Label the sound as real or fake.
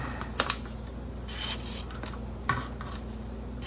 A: real